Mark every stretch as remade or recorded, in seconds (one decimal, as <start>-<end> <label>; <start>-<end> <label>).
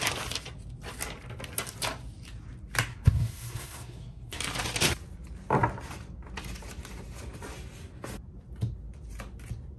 0.0-2.9 recorded; 2.9-4.4 remade; 4.4-9.8 recorded